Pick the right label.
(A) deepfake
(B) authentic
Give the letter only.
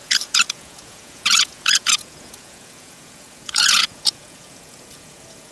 A